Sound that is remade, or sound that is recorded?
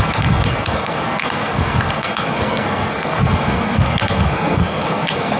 remade